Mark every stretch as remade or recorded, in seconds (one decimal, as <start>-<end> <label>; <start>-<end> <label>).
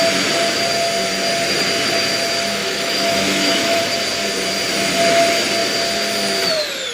0.0-2.6 recorded; 2.6-3.8 remade; 3.8-6.9 recorded